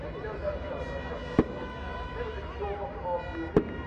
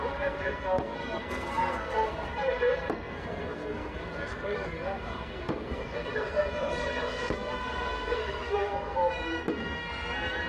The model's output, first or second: second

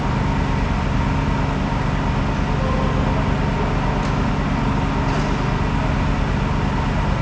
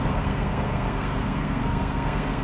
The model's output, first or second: second